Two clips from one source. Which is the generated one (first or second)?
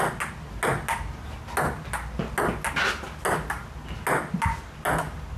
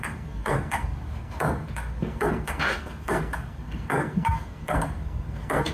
second